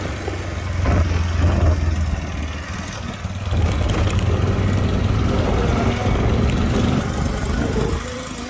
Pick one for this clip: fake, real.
real